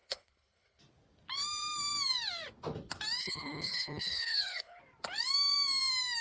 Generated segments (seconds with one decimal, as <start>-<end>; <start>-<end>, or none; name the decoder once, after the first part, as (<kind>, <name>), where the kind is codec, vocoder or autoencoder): 0.0-0.8 (codec, HILCodec); 3.2-4.8